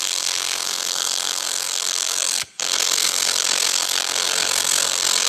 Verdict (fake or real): fake